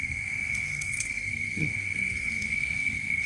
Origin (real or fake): fake